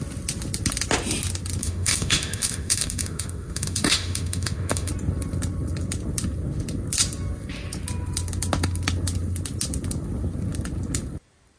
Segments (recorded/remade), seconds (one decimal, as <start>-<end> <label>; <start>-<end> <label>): 0.0-1.6 recorded; 1.6-4.9 remade; 4.9-11.6 recorded